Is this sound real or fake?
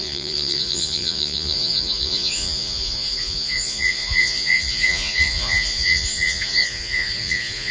fake